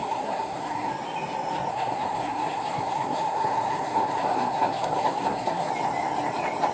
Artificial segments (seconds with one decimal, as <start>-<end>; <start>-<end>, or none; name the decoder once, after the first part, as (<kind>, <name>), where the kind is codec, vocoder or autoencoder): 0.0-0.9 (codec, SNAC); 1.7-5.7